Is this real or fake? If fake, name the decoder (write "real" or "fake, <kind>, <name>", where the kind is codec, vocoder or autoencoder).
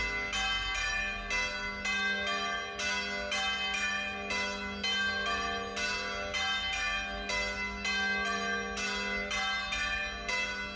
real